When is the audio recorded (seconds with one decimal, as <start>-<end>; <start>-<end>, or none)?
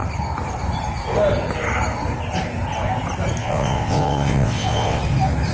0.0-3.4; 5.0-5.5